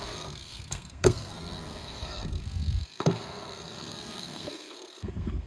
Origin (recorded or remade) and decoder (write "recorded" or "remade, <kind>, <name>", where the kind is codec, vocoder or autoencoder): remade, codec, SNAC